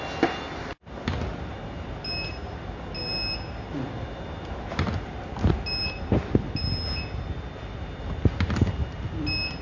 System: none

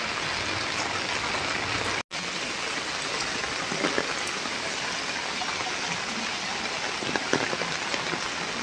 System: none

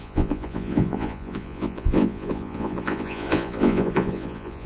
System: vocoder, Vocos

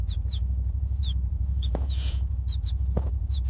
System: vocoder, Vocos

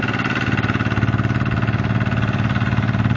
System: none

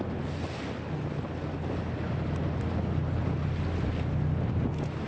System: none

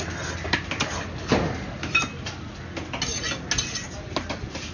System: none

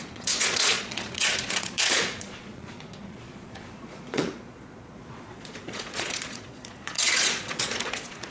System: vocoder, Vocos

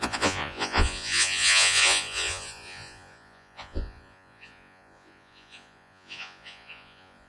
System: vocoder, Vocos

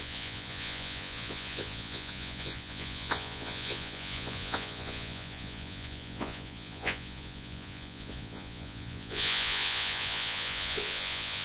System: vocoder, Vocos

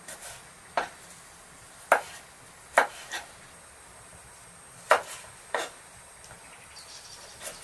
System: none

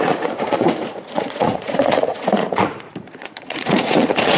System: vocoder, Vocos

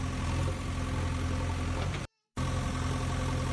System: none